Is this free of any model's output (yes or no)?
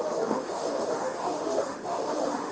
no